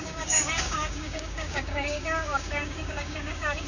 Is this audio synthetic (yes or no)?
yes